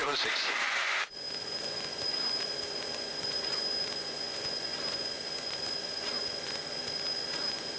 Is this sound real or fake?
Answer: fake